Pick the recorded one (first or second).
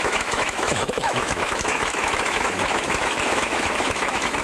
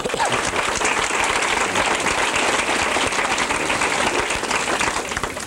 second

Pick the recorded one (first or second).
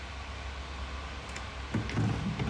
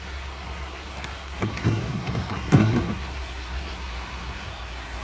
first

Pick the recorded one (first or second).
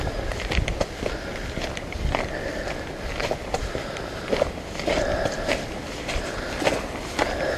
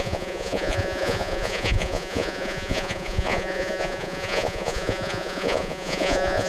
first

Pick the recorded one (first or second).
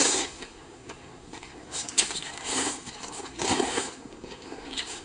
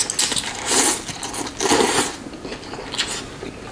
second